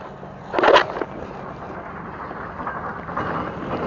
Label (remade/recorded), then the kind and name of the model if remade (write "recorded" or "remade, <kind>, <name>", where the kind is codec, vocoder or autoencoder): recorded